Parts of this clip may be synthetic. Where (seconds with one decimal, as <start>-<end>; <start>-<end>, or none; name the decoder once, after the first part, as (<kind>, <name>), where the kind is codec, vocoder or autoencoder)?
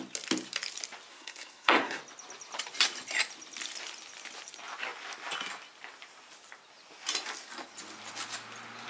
1.1-2.0 (codec, SNAC)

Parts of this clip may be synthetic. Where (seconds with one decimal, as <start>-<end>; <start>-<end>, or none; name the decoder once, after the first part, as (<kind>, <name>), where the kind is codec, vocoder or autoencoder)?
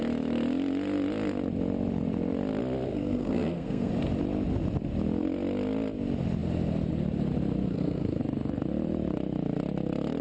2.9-3.9 (codec, SNAC); 7.6-8.2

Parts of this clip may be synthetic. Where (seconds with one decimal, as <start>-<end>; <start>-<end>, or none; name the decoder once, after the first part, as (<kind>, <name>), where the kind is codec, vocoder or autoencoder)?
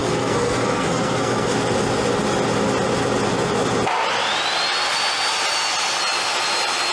0.0-1.5 (codec, SNAC)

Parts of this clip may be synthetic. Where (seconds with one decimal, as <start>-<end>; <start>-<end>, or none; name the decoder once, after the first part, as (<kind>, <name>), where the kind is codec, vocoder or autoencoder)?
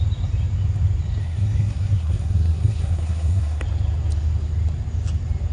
1.2-3.6 (codec, SNAC)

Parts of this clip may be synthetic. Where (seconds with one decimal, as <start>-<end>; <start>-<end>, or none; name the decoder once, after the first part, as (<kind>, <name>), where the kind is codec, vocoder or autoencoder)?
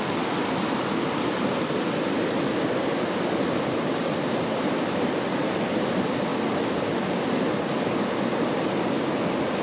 none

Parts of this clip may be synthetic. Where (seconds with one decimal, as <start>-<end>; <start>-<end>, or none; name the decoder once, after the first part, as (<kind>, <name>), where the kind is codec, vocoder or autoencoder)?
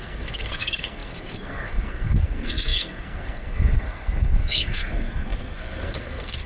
0.0-6.5 (codec, SNAC)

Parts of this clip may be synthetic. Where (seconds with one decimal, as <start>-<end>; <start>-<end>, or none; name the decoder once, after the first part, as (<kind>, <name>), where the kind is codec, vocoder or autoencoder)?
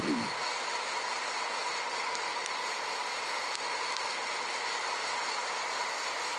none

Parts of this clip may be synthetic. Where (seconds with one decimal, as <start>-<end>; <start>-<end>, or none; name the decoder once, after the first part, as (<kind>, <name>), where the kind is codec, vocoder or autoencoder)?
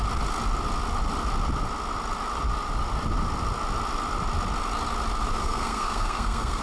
5.4-6.6 (codec, SNAC)